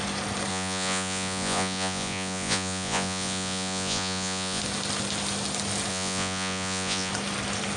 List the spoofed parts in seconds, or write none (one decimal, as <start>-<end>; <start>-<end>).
0.5-4.6; 5.9-7.1